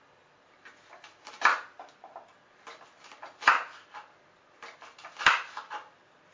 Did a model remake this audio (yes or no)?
no